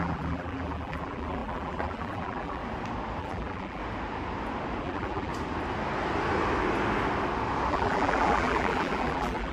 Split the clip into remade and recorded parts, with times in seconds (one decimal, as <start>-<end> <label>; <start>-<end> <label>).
0.0-2.6 remade; 2.6-3.2 recorded; 3.2-3.8 remade; 3.8-4.8 recorded; 4.8-5.3 remade; 5.3-7.7 recorded; 7.7-9.5 remade